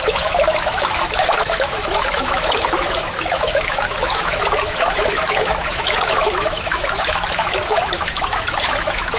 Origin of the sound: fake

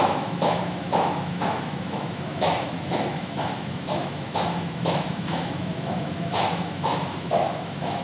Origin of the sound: fake